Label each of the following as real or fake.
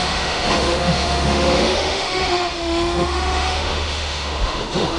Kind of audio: fake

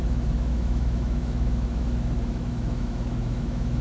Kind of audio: fake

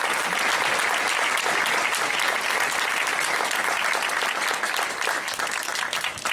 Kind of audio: real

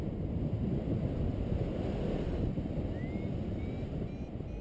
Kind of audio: real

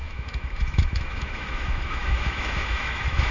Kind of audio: fake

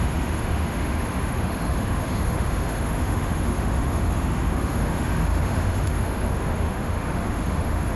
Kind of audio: fake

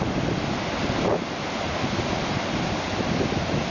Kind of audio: real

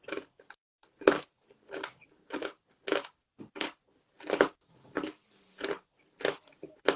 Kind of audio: real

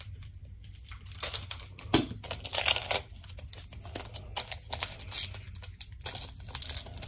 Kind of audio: real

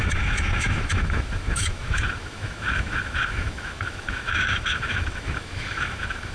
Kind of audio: fake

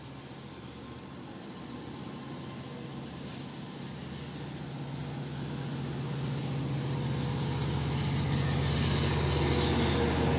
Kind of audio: real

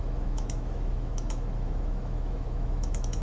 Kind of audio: fake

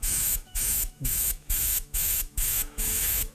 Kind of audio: fake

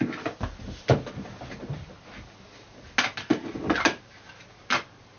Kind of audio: real